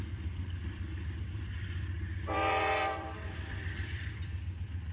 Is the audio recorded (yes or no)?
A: no